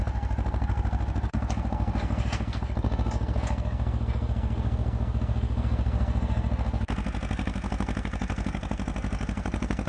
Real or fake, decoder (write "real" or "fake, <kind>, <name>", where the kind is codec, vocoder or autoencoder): fake, codec, SNAC